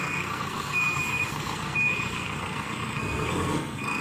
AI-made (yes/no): yes